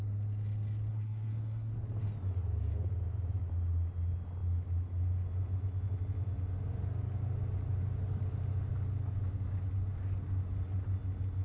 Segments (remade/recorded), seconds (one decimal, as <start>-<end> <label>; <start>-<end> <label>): 0.0-0.9 recorded; 0.9-1.7 remade; 1.7-11.4 recorded